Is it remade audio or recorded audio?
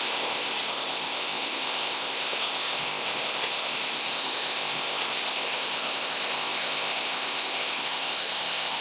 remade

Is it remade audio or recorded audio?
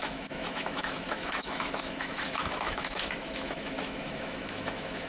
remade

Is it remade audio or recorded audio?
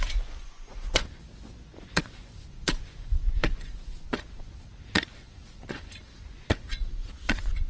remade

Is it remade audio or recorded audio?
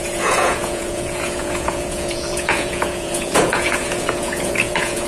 remade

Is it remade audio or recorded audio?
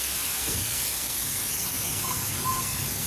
remade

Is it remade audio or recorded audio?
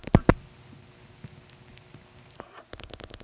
recorded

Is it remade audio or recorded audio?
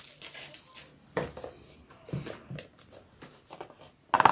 recorded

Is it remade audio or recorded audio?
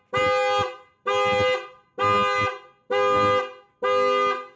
recorded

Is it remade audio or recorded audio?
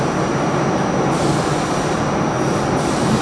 recorded